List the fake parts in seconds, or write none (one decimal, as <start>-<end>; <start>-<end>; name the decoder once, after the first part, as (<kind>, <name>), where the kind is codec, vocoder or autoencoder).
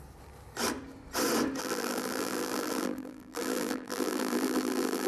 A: 1.6-5.1 (vocoder, BigVGAN v2)